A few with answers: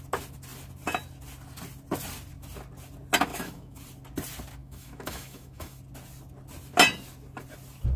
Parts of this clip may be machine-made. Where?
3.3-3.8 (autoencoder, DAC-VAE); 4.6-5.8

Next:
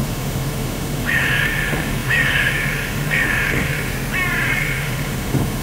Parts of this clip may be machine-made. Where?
0.0-3.9 (autoencoder, DAC-VAE); 4.6-5.6